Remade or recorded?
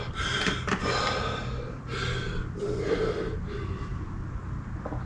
recorded